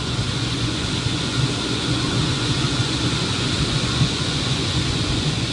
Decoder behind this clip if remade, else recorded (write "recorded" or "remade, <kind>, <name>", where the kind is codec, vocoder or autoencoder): remade, vocoder, Vocos